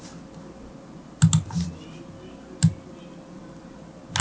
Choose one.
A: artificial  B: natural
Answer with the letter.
B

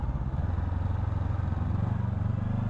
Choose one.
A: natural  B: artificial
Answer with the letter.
A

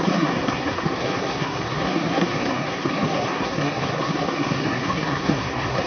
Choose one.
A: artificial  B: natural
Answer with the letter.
A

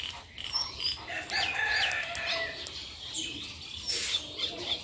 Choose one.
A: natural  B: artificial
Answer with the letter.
A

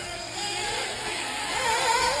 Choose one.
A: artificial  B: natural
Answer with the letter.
A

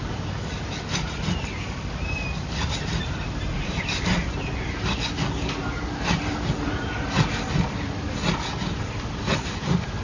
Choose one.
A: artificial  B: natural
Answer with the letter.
B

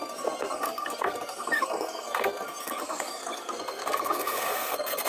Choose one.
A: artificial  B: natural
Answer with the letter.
A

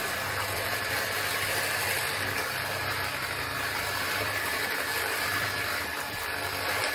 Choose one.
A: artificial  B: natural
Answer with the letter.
B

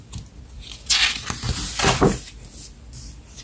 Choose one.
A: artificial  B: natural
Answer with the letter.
B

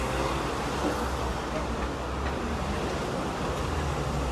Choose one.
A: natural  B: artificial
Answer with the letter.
A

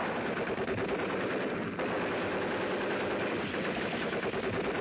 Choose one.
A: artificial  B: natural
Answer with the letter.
B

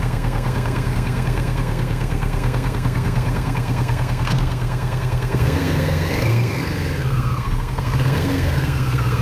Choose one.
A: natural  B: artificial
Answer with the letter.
B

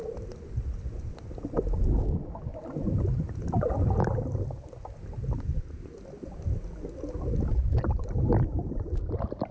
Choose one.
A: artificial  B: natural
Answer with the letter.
B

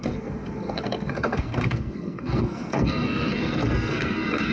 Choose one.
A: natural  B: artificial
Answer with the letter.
B